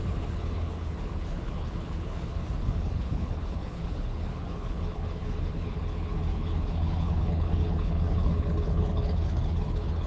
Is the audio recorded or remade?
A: remade